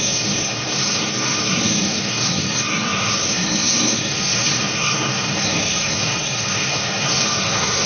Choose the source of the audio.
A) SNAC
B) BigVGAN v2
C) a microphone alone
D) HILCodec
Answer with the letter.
A